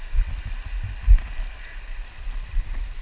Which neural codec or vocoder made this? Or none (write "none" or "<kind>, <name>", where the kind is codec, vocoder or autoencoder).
none